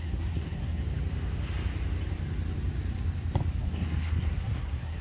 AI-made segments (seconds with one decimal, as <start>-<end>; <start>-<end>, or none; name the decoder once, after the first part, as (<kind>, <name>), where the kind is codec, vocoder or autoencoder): 0.0-0.8 (codec, SNAC); 3.6-5.0